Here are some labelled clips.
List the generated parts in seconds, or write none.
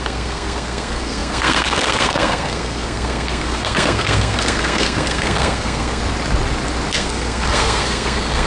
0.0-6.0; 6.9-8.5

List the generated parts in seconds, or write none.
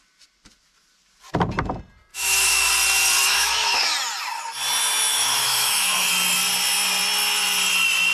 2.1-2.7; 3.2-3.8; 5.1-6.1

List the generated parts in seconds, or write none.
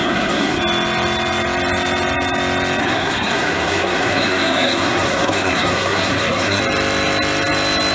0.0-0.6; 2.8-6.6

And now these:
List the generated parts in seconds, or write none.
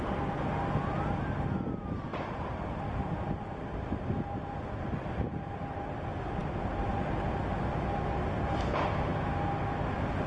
2.1-3.8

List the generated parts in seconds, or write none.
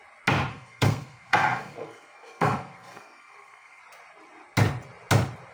0.5-3.8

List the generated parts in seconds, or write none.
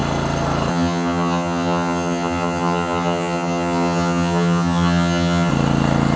0.7-5.5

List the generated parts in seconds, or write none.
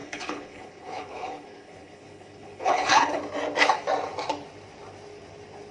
0.0-3.2